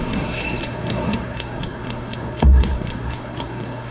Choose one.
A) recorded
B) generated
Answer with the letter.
B